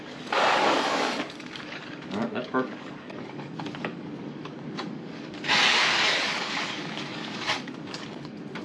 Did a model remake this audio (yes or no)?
yes